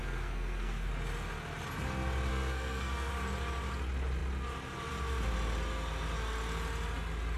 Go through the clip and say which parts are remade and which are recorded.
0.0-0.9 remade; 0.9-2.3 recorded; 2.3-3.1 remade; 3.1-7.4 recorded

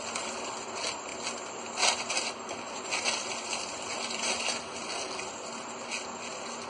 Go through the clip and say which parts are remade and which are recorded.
0.0-6.7 recorded

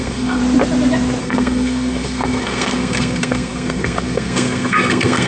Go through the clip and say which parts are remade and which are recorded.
0.0-0.4 remade; 0.4-1.2 recorded; 1.2-5.3 remade

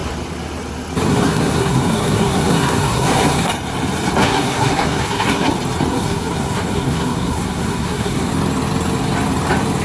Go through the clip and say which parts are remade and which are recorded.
0.0-1.1 recorded; 1.1-3.5 remade; 3.5-4.2 recorded; 4.2-5.5 remade; 5.5-5.9 recorded; 5.9-8.3 remade; 8.3-9.8 recorded

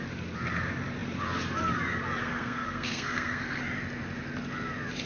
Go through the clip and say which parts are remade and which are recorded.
0.0-2.2 recorded; 2.2-3.6 remade; 3.6-5.1 recorded

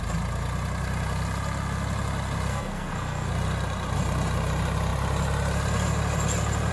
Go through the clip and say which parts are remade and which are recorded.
0.0-2.5 recorded; 2.5-3.3 remade; 3.3-6.7 recorded

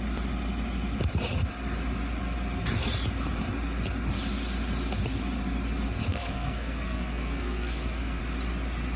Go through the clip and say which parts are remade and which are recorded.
0.0-6.1 recorded; 6.1-8.2 remade; 8.2-9.0 recorded